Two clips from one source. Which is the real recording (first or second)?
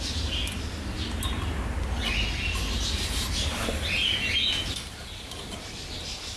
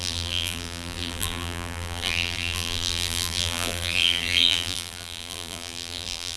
first